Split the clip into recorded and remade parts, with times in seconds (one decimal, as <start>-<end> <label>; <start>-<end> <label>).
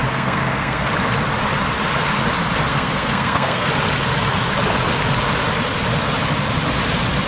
0.0-0.9 remade; 0.9-2.7 recorded; 2.7-3.7 remade; 3.7-7.3 recorded